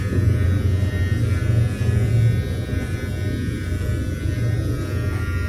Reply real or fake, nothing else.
real